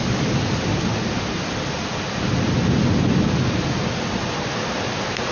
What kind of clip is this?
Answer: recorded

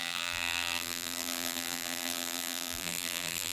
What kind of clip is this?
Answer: remade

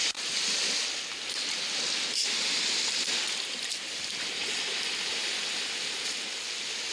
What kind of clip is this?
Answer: recorded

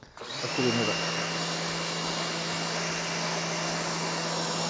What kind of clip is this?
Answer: recorded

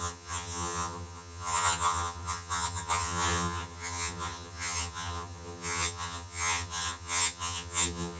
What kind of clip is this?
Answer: remade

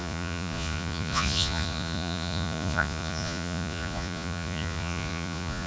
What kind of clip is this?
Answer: remade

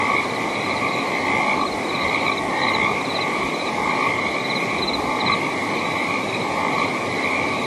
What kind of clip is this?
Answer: recorded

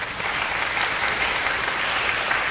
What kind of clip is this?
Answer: recorded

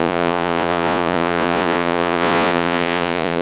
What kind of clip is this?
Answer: remade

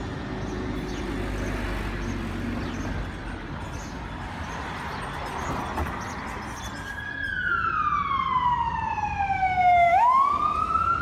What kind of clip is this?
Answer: recorded